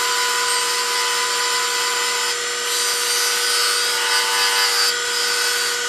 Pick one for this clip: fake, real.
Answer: real